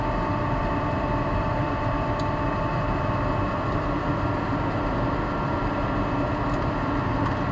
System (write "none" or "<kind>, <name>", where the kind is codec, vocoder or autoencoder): none